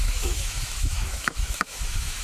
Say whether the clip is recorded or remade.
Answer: remade